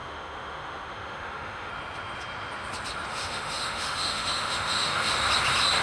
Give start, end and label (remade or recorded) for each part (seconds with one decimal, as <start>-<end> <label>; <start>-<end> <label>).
0.0-1.7 remade; 1.7-3.1 recorded; 3.1-5.1 remade; 5.1-5.8 recorded